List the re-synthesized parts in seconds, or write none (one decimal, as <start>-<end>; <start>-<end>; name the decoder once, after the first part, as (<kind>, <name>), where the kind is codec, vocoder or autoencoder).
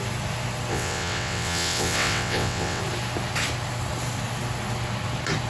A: 0.7-2.8 (vocoder, WaveNeXt)